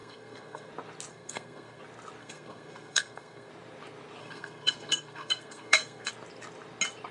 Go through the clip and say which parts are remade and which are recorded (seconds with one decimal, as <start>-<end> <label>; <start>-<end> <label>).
0.0-0.7 remade; 0.7-1.1 recorded; 1.1-1.8 remade; 1.8-2.2 recorded; 2.2-3.5 remade; 3.5-4.2 recorded; 4.2-6.1 remade; 6.1-7.1 recorded